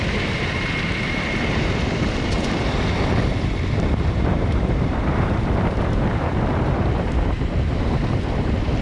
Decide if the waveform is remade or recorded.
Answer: remade